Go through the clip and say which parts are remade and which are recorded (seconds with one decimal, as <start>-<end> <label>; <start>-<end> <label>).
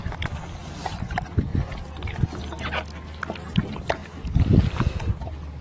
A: 0.0-1.5 remade; 1.5-3.2 recorded; 3.2-4.0 remade; 4.0-4.6 recorded; 4.6-5.6 remade